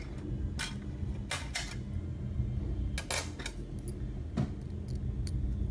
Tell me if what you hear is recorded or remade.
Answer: recorded